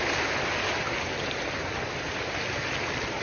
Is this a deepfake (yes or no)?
no